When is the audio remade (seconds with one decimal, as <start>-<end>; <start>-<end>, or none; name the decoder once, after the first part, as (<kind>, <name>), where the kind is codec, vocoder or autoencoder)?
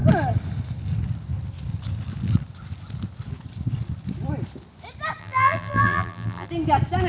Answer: 5.2-6.5 (vocoder, BigVGAN v2)